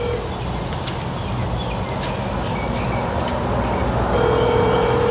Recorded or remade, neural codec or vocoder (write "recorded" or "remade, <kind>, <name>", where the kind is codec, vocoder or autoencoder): recorded